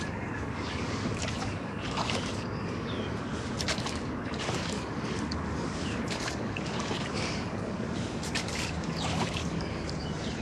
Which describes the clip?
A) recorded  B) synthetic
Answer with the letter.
B